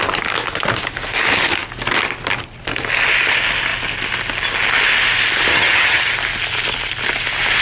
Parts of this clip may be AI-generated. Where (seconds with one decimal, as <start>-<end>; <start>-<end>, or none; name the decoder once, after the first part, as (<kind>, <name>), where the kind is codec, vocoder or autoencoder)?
5.5-6.1 (vocoder, HiFi-GAN)

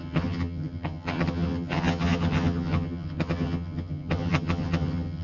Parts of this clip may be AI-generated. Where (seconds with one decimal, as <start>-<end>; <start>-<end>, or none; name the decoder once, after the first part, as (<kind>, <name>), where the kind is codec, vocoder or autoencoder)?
0.0-5.2 (vocoder, HiFi-GAN)

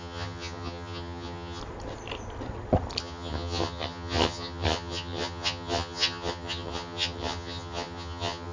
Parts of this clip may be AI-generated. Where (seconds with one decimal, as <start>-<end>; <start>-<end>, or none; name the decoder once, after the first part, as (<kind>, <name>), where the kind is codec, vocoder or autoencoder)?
0.0-1.6 (vocoder, HiFi-GAN); 3.0-8.5

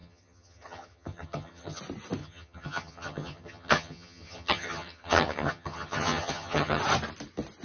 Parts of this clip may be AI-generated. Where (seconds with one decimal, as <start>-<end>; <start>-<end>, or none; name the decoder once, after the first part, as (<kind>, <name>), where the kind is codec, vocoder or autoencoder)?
0.0-1.8 (vocoder, HiFi-GAN); 2.2-6.8

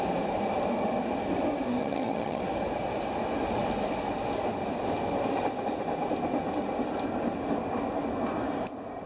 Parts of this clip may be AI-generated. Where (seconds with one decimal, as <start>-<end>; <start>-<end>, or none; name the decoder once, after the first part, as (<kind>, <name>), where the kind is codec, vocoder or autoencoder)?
1.8-2.4 (vocoder, HiFi-GAN)

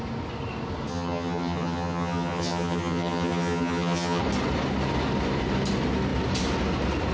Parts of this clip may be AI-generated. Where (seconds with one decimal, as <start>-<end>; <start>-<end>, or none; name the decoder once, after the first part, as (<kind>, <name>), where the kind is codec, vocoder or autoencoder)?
0.9-4.2 (vocoder, HiFi-GAN)

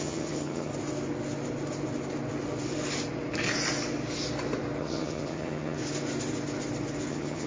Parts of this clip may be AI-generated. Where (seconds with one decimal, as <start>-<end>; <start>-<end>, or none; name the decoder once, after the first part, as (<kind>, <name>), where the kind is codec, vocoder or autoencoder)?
0.0-0.7 (vocoder, HiFi-GAN); 4.8-5.8; 7.1-7.5

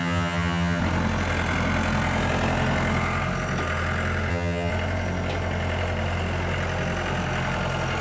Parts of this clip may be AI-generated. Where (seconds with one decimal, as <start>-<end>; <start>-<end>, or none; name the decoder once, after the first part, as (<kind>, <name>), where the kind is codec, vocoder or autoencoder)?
0.0-0.8 (vocoder, HiFi-GAN); 4.3-4.7